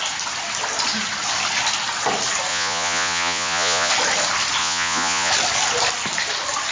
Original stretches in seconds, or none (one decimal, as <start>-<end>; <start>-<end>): 0.0-2.5; 3.9-4.6; 5.3-6.7